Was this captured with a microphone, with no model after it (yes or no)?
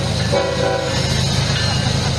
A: yes